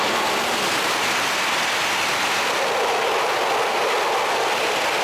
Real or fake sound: real